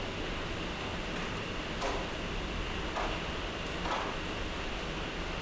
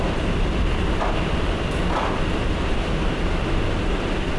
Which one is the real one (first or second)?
first